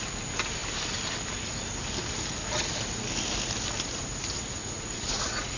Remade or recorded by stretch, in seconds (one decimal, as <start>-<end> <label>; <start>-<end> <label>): 0.0-4.6 recorded; 4.6-5.6 remade